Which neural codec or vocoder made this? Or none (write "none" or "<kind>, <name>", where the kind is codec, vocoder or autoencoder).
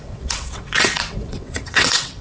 vocoder, WaveNeXt